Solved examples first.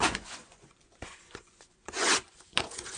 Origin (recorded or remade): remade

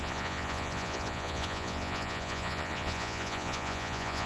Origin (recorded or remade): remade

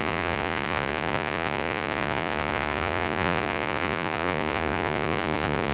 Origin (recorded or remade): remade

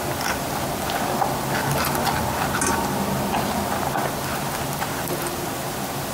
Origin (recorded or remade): recorded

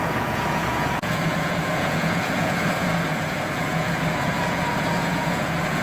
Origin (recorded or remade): remade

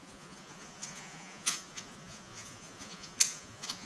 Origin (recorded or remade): remade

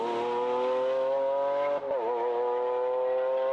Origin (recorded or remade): recorded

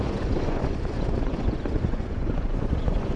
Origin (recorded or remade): remade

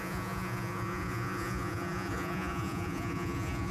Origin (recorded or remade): remade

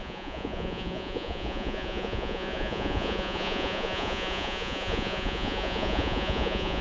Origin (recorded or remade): remade